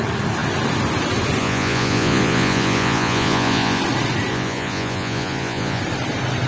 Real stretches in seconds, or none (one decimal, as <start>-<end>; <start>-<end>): 0.0-1.4; 3.8-4.3; 5.8-6.5